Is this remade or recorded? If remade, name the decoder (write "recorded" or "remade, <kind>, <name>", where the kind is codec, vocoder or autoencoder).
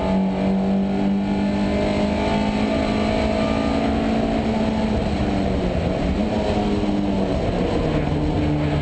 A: recorded